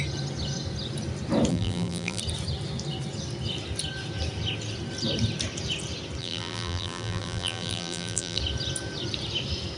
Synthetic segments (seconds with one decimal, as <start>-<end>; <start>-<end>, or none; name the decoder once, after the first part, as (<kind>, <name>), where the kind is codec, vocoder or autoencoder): 1.5-2.2 (vocoder, BigVGAN v2); 6.2-8.4